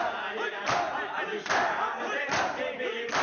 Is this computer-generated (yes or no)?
no